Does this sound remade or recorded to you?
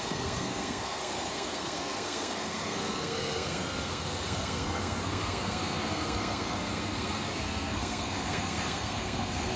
remade